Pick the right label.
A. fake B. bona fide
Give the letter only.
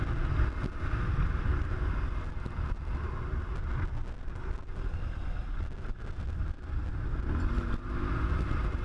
B